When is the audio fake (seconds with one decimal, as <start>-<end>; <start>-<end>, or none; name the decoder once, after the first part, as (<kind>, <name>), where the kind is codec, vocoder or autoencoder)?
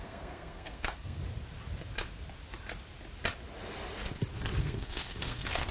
0.0-1.2 (codec, SNAC); 4.6-5.7